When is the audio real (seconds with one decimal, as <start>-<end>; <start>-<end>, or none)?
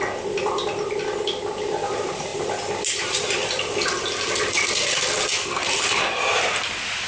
0.0-7.1